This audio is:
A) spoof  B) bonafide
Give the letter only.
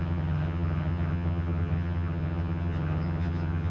A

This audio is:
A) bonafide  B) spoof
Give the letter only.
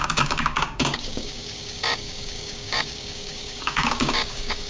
B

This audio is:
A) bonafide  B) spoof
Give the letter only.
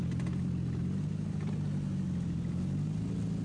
A